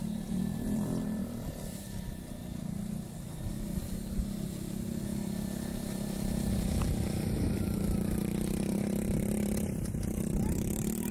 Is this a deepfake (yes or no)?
yes